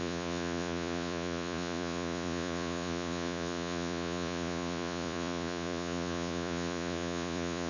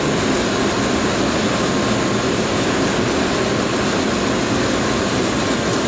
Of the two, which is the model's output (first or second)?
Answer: first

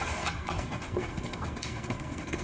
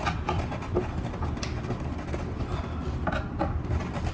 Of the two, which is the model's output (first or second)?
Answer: first